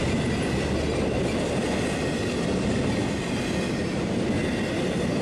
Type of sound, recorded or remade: recorded